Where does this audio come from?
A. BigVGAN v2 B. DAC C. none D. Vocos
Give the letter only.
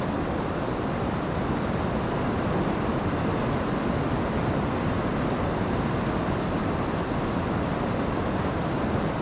C